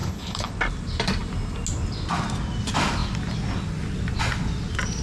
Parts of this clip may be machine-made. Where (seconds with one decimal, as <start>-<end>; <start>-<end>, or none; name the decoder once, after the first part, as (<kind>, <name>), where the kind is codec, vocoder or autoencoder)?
0.0-0.5 (codec, HILCodec)